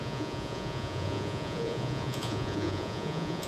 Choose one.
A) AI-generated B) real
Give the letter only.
A